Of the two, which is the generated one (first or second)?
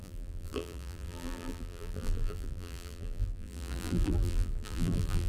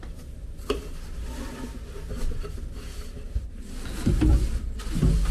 first